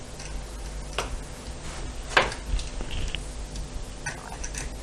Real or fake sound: real